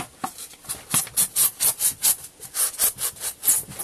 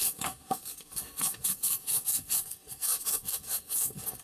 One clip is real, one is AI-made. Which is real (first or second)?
first